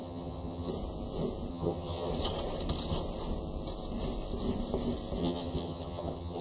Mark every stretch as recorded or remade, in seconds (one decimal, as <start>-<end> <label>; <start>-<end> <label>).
0.0-0.7 remade; 0.7-1.5 recorded; 1.5-2.1 remade; 2.1-5.2 recorded; 5.2-6.4 remade